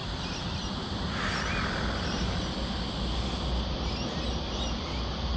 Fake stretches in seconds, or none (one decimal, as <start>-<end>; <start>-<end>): none